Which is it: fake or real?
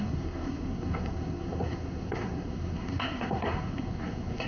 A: fake